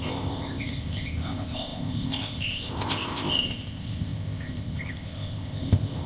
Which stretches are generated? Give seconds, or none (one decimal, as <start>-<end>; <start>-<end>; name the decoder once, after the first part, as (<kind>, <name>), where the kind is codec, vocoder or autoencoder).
0.0-6.1 (codec, ZipCodec)